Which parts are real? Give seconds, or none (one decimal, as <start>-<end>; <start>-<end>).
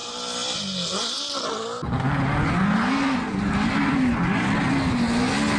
0.0-5.6